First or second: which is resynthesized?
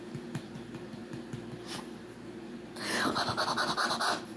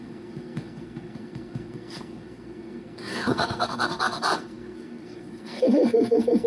second